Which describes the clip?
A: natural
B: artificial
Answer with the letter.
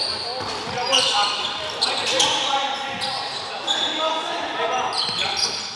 A